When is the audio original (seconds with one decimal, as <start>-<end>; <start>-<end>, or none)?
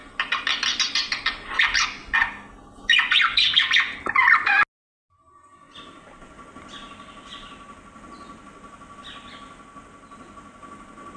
0.0-11.2